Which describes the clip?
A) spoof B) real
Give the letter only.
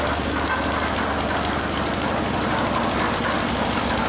B